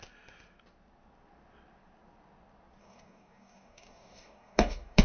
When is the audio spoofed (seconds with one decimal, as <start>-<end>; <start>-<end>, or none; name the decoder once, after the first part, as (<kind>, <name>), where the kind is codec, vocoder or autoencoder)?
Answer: 2.8-5.0 (codec, DAC)